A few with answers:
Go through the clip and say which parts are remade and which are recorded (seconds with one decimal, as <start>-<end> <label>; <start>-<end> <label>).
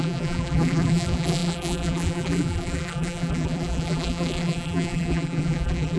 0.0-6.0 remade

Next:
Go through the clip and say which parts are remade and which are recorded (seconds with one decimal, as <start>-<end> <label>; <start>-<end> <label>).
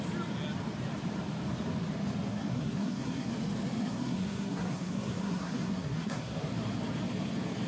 0.0-2.3 recorded; 2.3-3.3 remade; 3.3-3.8 recorded; 3.8-6.5 remade; 6.5-7.7 recorded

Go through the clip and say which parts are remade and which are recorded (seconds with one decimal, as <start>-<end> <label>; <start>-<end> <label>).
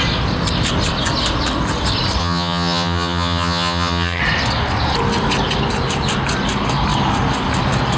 0.0-2.2 recorded; 2.2-4.2 remade; 4.2-8.0 recorded